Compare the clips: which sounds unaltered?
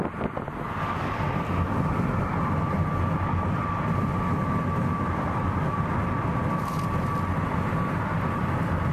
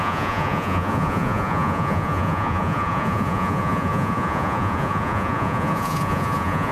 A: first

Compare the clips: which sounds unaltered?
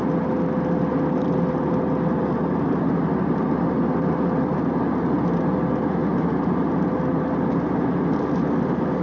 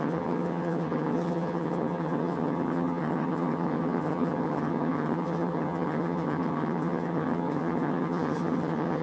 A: first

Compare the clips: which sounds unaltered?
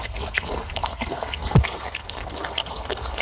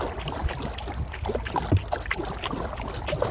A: second